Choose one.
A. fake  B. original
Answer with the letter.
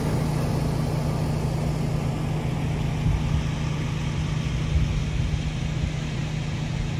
B